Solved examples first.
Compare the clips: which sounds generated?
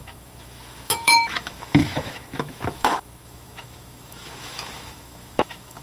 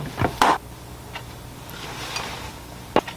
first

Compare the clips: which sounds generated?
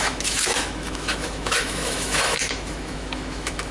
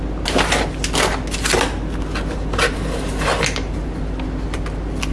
first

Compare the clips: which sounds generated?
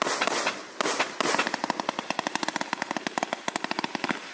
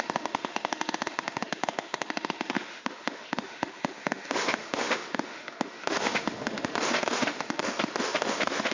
second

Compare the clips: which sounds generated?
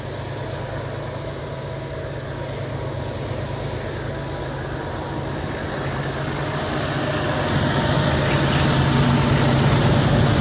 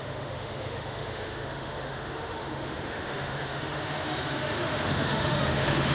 second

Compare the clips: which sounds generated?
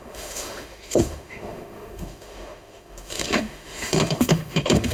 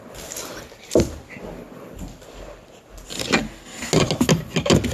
first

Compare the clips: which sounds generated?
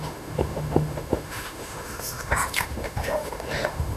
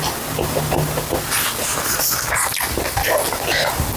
first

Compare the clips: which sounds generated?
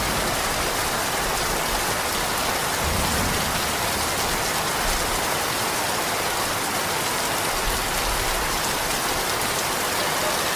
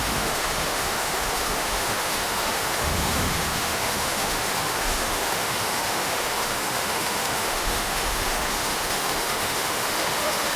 second